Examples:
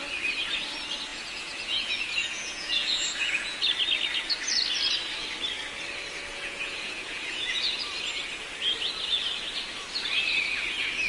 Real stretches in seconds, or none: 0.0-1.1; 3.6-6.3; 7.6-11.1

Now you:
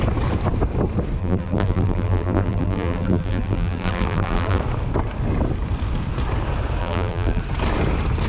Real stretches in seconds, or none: 0.0-1.2; 4.6-6.8; 7.4-8.3

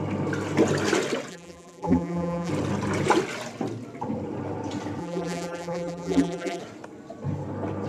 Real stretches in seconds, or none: 0.0-1.3; 2.5-5.0; 6.6-7.9